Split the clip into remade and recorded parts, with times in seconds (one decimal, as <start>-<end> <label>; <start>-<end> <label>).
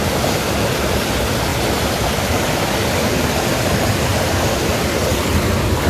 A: 0.0-4.1 recorded; 4.1-4.6 remade; 4.6-5.9 recorded